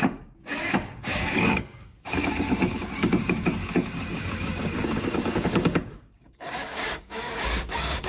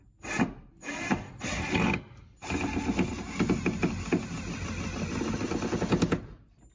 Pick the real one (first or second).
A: second